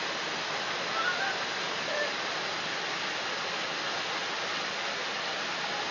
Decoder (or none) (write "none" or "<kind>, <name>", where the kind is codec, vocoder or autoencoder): none